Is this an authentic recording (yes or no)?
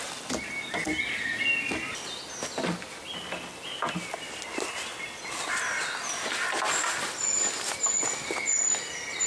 yes